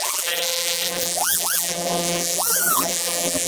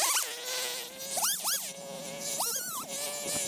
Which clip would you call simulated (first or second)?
first